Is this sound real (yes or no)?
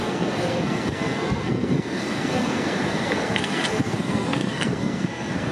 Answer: no